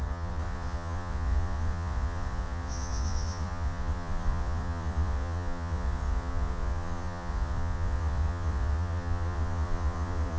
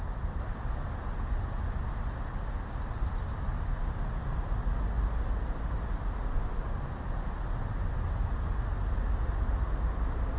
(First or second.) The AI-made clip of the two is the first